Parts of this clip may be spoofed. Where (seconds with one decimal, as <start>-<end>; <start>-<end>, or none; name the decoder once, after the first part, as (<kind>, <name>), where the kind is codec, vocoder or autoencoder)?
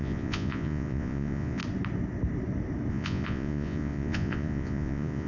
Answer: 0.0-1.6 (vocoder, Vocos); 2.9-5.3